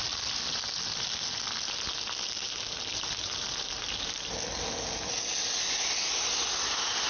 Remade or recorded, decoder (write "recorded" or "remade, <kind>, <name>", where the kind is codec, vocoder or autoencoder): recorded